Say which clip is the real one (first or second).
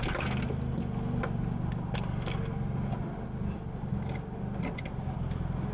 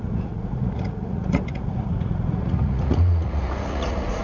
first